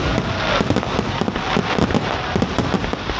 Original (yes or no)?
yes